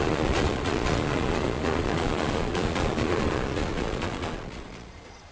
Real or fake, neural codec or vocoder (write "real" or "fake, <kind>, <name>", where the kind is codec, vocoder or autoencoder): fake, vocoder, Vocos